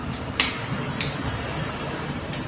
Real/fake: fake